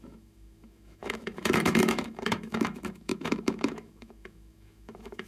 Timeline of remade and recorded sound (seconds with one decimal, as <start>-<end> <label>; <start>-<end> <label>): 0.0-5.3 remade